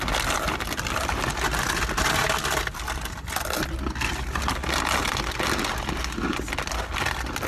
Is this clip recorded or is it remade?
recorded